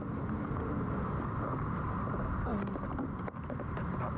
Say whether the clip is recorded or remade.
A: recorded